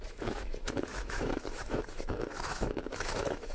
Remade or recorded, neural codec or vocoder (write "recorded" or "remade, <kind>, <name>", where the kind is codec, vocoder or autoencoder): remade, autoencoder, DAC-VAE